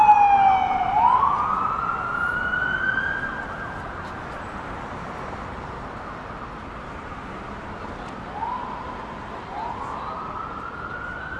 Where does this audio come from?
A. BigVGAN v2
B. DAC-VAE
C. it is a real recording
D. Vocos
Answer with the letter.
C